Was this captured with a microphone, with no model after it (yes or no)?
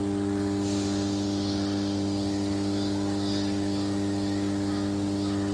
yes